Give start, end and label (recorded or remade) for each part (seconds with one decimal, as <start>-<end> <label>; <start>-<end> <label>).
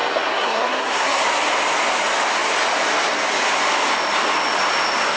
0.0-1.2 remade; 1.2-5.2 recorded